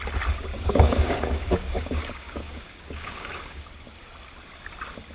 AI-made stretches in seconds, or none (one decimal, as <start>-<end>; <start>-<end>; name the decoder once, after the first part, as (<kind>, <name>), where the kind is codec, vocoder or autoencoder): 0.5-3.6 (codec, DAC)